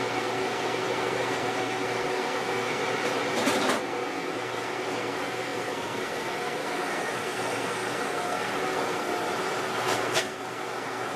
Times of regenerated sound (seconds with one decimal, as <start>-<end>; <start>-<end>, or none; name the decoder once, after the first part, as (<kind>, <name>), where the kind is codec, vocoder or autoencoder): 0.0-2.8 (codec, SNAC); 3.8-9.1; 9.6-11.2